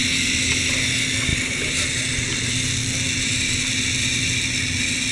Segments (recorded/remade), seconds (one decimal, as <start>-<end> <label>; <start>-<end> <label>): 0.0-5.1 recorded